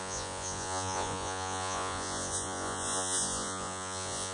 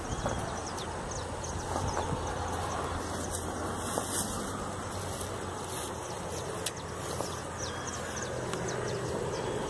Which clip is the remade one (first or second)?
first